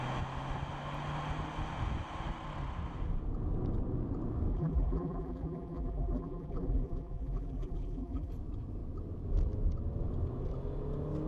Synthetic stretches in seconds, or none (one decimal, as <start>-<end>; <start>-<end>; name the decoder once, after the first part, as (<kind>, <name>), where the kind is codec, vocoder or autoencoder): 4.5-8.3 (vocoder, BigVGAN v2)